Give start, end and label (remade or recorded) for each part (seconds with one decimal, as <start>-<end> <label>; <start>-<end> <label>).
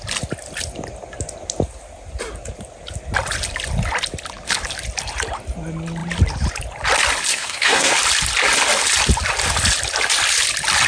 0.0-7.3 recorded; 7.3-7.9 remade; 7.9-10.9 recorded